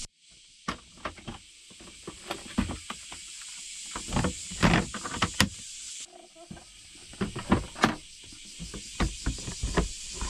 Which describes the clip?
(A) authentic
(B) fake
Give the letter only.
A